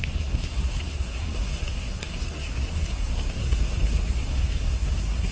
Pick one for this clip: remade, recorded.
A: remade